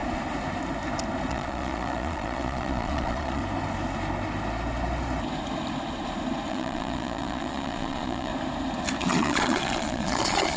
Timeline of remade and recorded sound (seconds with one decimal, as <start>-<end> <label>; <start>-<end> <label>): 0.0-1.3 recorded; 1.3-3.4 remade; 3.4-6.5 recorded; 6.5-8.3 remade; 8.3-9.0 recorded; 9.0-10.6 remade